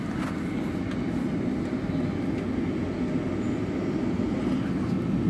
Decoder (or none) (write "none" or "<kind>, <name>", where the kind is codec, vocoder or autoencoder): none